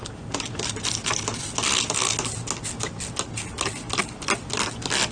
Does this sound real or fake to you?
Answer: real